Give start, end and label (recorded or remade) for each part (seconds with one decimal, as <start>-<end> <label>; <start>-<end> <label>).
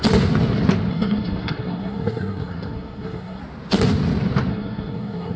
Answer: 0.0-0.9 recorded; 0.9-3.4 remade; 3.4-4.5 recorded; 4.5-5.4 remade